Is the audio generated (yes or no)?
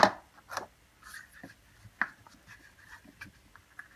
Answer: no